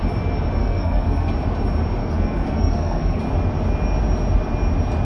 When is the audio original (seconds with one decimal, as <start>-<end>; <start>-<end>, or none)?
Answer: 0.0-0.6; 1.3-2.0; 3.2-5.0